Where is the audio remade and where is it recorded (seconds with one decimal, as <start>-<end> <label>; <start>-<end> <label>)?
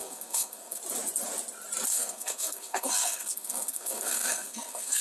0.0-0.8 remade; 0.8-1.9 recorded; 1.9-5.0 remade